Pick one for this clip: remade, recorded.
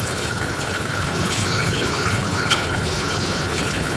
remade